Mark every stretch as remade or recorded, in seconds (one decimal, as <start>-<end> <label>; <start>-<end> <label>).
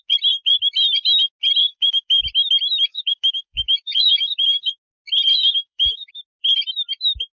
0.0-1.6 recorded; 1.6-2.2 remade; 2.2-2.9 recorded; 2.9-4.7 remade; 4.7-5.3 recorded; 5.3-6.1 remade; 6.1-7.3 recorded